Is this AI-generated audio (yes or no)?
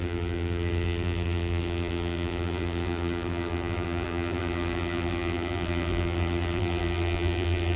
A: yes